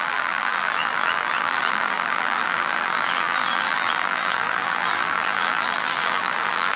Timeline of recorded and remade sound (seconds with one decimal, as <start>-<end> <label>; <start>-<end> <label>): 0.0-6.8 remade